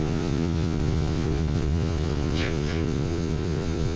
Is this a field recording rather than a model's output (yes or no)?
no